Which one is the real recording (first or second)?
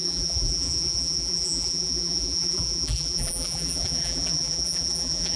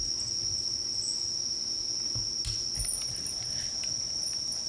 second